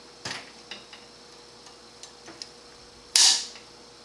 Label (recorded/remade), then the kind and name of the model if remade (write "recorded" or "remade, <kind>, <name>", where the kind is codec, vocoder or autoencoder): recorded